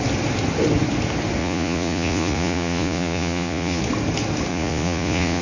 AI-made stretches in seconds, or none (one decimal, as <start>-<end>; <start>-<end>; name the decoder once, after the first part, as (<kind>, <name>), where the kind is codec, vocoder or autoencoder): 1.4-3.8 (vocoder, Vocos); 4.5-5.4